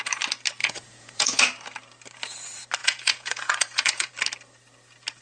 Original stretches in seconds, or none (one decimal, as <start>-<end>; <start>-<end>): 0.0-0.6; 1.4-2.8; 4.1-5.2